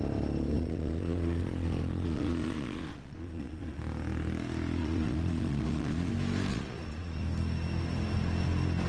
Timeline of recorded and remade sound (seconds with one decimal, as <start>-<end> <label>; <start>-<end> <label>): 0.0-0.5 recorded; 0.5-3.8 remade; 3.8-4.8 recorded; 4.8-6.1 remade; 6.1-6.5 recorded; 6.5-7.2 remade; 7.2-8.9 recorded